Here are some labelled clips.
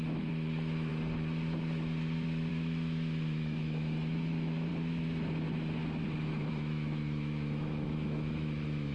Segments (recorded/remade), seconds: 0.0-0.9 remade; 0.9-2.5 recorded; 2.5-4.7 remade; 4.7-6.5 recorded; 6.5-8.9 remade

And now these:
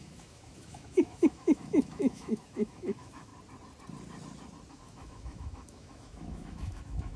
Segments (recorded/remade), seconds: 0.0-3.3 remade; 3.3-4.7 recorded; 4.7-7.2 remade

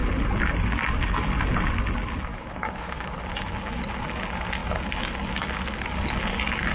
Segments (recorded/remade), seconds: 0.0-2.3 recorded; 2.3-3.2 remade; 3.2-6.7 recorded

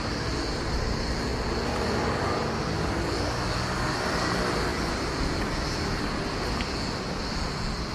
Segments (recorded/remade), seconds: 0.0-7.9 recorded

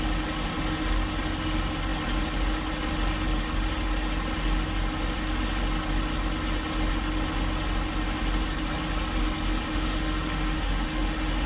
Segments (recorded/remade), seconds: 0.0-9.7 recorded; 9.7-11.5 remade

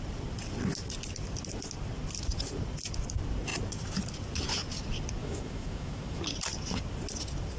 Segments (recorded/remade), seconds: 0.0-5.2 recorded; 5.2-6.2 remade; 6.2-7.6 recorded

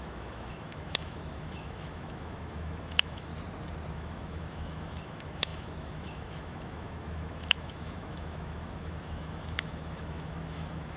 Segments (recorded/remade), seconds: 0.0-3.3 remade; 3.3-3.9 recorded; 3.9-11.0 remade